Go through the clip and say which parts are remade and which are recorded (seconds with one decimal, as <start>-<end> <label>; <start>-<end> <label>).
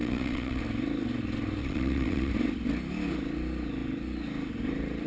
0.0-0.6 remade; 0.6-1.6 recorded; 1.6-2.3 remade; 2.3-5.1 recorded